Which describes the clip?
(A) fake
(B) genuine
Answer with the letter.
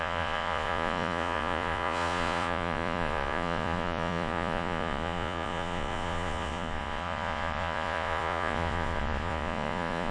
A